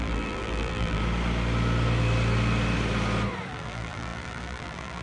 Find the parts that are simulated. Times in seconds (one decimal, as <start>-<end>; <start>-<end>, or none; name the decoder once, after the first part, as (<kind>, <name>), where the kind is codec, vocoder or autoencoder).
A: 0.0-1.0 (vocoder, BigVGAN v2); 3.5-5.0